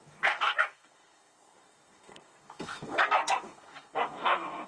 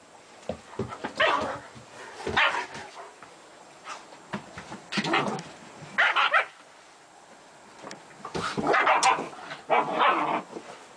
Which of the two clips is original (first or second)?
second